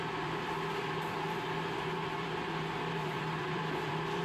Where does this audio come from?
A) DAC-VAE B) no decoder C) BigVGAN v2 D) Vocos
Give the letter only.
C